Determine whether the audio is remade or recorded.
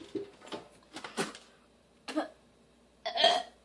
recorded